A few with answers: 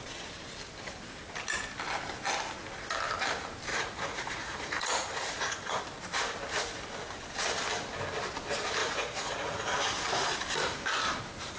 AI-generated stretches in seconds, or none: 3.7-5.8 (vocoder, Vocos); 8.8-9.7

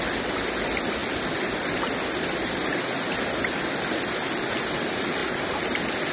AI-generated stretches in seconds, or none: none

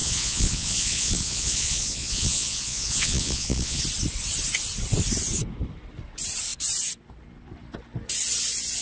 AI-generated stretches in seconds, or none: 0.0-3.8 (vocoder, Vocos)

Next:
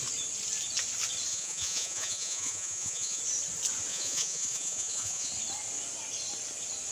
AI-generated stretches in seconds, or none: 1.3-3.2 (vocoder, Vocos); 3.9-5.3